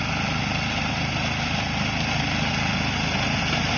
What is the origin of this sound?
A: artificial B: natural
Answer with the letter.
B